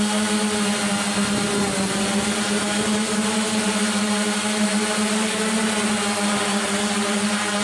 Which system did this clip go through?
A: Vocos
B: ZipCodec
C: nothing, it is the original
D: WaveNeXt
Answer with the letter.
C